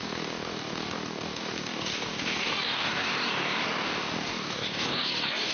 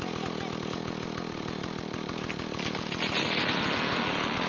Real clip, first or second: second